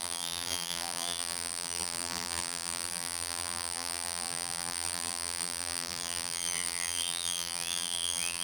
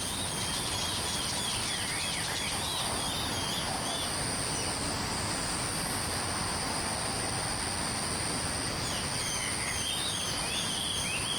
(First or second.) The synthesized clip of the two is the first